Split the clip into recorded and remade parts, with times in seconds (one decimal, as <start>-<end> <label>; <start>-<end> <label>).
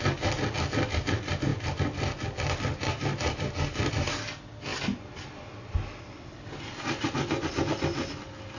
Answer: 0.0-8.6 recorded